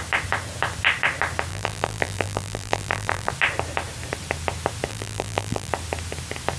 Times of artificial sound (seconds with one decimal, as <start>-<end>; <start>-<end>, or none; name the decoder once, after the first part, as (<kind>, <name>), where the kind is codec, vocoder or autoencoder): 1.5-3.3 (vocoder, BigVGAN v2); 4.9-5.7